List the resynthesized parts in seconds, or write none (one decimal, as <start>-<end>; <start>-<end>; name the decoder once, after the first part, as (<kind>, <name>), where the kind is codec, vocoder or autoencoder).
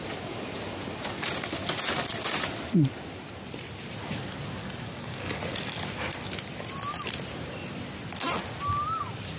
4.6-5.4 (codec, DAC)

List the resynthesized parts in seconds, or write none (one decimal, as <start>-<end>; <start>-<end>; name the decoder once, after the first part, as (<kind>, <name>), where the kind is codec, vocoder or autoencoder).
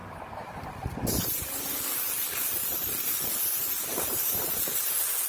0.0-0.7 (vocoder, BigVGAN v2); 3.9-4.5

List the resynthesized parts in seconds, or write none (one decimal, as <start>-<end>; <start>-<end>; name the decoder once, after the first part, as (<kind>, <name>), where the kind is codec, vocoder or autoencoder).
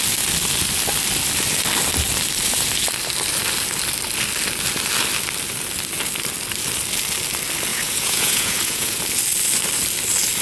7.7-9.0 (vocoder, Vocos)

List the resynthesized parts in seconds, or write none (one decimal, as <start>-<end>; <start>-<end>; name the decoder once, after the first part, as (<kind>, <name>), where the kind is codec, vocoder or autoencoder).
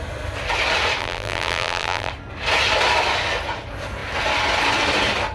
1.0-2.1 (vocoder, BigVGAN v2)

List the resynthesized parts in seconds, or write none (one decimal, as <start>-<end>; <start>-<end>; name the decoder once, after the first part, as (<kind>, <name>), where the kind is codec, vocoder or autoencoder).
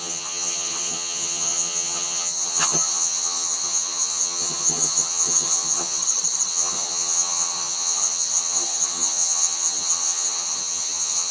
0.0-6.0 (vocoder, HiFi-GAN); 6.5-11.3